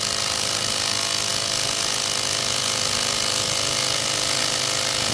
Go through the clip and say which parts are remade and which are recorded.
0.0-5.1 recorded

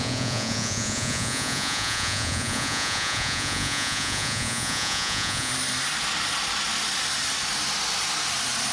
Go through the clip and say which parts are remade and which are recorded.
0.0-5.5 remade; 5.5-8.7 recorded